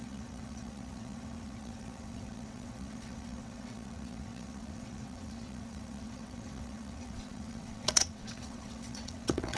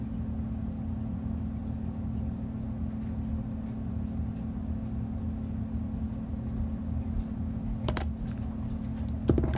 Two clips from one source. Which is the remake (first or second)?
first